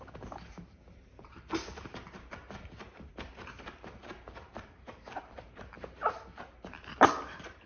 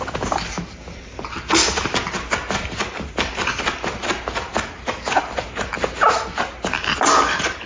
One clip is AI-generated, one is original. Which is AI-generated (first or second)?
first